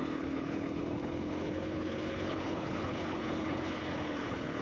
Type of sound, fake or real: fake